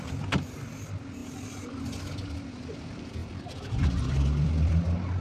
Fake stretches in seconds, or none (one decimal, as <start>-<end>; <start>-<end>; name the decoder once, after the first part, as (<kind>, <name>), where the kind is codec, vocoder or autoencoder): 1.2-1.8 (vocoder, BigVGAN v2); 3.2-4.8